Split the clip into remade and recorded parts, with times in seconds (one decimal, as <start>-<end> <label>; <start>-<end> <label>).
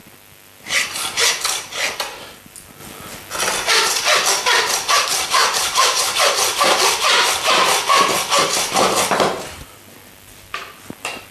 0.0-5.4 recorded; 5.4-6.2 remade; 6.2-11.3 recorded